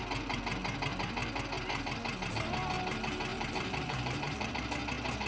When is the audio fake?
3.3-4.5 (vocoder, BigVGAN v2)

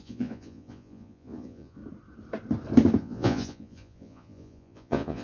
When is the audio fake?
0.0-1.8 (vocoder, Vocos); 3.0-5.2

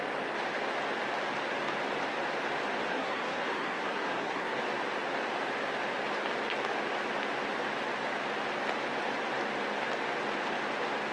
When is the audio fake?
2.9-4.6 (codec, SNAC)

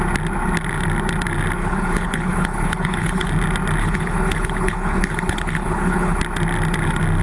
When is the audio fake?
1.6-3.3 (codec, HILCodec); 3.8-6.2

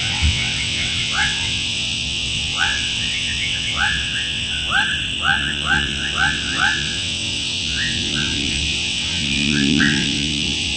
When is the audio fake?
0.0-4.7 (vocoder, WaveNeXt); 5.2-10.8

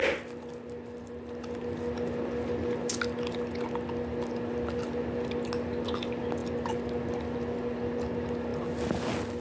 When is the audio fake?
none

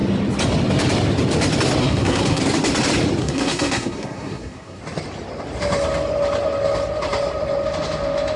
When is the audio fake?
1.8-2.4 (codec, SNAC); 3.2-4.8